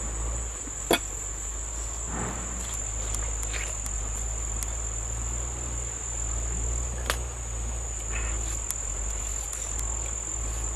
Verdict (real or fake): real